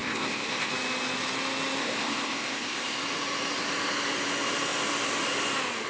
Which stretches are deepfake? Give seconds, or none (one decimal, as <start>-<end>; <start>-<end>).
0.0-0.7; 1.8-3.0